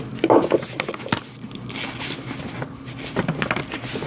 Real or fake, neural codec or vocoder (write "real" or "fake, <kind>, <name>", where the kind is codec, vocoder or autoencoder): real